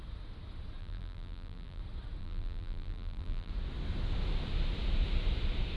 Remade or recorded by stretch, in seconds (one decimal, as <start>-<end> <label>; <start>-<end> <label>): 0.0-0.8 recorded; 0.8-1.8 remade; 1.8-2.2 recorded; 2.2-3.5 remade; 3.5-5.8 recorded